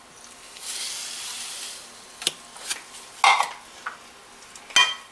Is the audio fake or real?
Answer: real